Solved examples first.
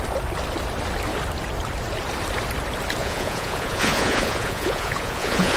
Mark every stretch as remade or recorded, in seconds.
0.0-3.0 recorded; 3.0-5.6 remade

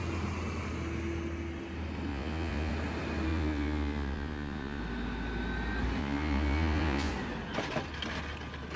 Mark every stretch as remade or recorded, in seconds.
0.0-2.1 recorded; 2.1-2.7 remade; 2.7-3.3 recorded; 3.3-4.8 remade; 4.8-6.0 recorded; 6.0-7.1 remade; 7.1-8.8 recorded

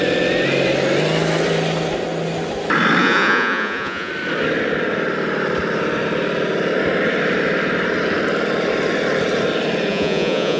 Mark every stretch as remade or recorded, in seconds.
0.0-3.0 recorded; 3.0-4.1 remade; 4.1-9.9 recorded; 9.9-10.6 remade